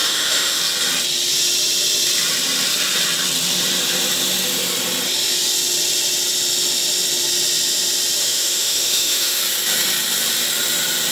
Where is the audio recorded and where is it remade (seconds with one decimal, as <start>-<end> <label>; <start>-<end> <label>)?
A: 0.0-0.6 remade; 0.6-8.2 recorded; 8.2-9.4 remade; 9.4-11.1 recorded